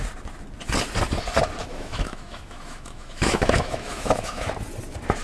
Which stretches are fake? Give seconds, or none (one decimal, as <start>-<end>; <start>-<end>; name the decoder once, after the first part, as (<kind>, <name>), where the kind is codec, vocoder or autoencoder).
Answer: 1.6-4.5 (autoencoder, DAC-VAE)